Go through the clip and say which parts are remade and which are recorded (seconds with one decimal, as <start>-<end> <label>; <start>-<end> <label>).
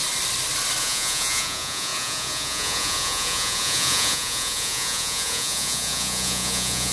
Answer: 0.0-0.8 recorded; 0.8-6.9 remade